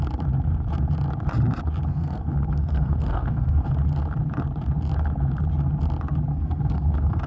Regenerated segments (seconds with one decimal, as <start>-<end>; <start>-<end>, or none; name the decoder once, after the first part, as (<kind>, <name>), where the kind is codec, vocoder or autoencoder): 1.9-3.7 (codec, SNAC); 6.3-7.3